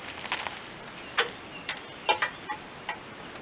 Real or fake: real